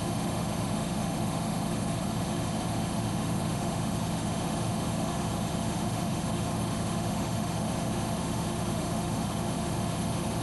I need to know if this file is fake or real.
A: fake